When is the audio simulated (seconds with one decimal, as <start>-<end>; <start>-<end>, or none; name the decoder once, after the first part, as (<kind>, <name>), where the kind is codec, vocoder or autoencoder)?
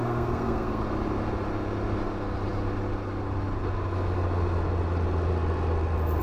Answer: 0.0-0.8 (codec, SNAC)